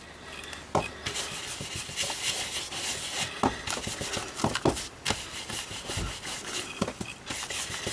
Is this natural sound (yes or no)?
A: yes